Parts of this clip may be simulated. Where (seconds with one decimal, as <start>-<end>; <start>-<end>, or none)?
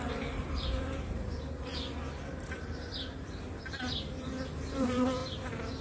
0.0-1.7; 4.7-5.2